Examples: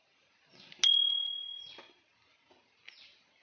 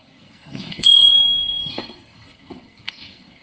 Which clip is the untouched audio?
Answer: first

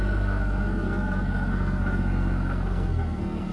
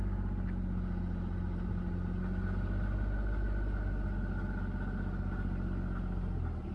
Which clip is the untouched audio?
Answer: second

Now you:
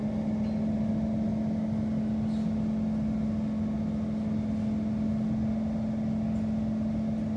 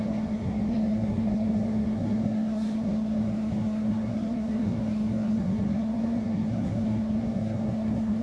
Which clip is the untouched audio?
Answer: first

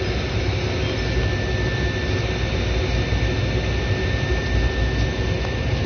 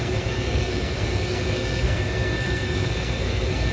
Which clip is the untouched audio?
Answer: first